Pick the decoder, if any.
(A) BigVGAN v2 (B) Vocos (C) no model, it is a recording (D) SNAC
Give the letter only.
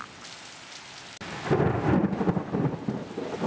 C